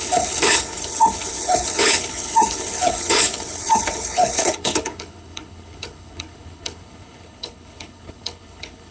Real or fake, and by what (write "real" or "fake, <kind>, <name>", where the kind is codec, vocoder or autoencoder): fake, codec, HILCodec